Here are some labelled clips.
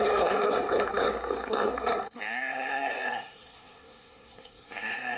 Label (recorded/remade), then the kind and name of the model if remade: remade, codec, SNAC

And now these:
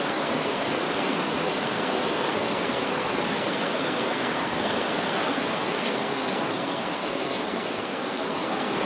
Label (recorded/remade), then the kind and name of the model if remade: remade, codec, SNAC